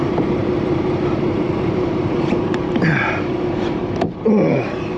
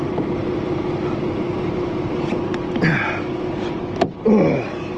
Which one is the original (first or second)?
second